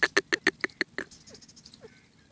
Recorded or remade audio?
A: recorded